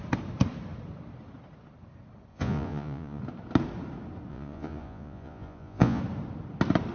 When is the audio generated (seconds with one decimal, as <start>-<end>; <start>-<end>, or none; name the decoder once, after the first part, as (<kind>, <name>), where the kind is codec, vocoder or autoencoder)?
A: 2.3-3.2 (vocoder, Vocos); 4.3-6.0